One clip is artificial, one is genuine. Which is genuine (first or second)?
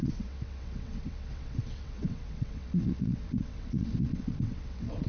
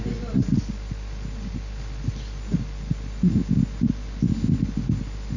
second